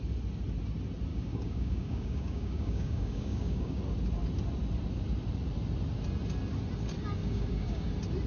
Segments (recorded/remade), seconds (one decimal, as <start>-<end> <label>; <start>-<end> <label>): 0.0-1.1 recorded; 1.1-3.8 remade; 3.8-7.2 recorded; 7.2-7.9 remade; 7.9-8.3 recorded